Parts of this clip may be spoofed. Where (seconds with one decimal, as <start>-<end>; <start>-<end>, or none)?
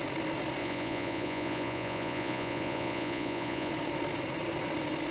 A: 0.6-3.7